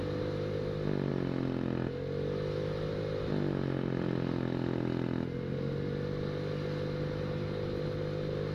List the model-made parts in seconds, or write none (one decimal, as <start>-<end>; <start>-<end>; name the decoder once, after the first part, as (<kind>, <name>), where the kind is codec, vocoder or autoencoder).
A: none